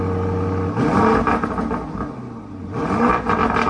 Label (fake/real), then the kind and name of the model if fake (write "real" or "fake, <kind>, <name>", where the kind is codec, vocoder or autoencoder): real